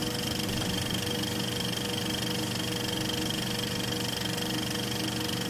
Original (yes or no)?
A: yes